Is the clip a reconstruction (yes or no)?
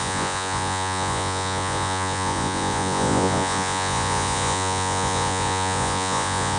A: yes